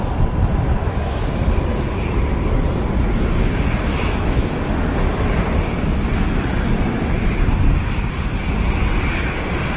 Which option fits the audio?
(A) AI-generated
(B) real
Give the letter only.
B